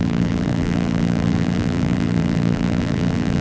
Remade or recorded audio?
remade